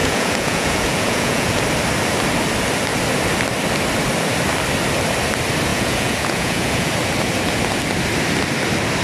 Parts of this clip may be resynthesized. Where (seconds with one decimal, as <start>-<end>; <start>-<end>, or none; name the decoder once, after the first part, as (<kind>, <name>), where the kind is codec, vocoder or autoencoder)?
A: 0.0-1.6 (vocoder, Vocos); 5.7-6.9